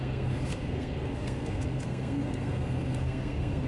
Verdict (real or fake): fake